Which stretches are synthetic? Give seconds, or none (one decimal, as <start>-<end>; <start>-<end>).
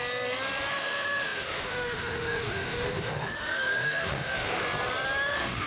0.7-4.6; 5.3-5.7